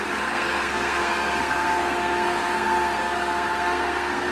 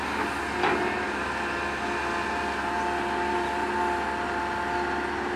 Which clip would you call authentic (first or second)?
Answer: second